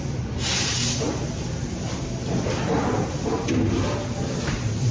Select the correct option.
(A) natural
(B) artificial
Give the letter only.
A